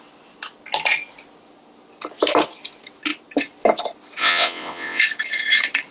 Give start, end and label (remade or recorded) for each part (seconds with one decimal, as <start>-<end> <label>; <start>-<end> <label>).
0.0-4.2 recorded; 4.2-5.0 remade; 5.0-5.9 recorded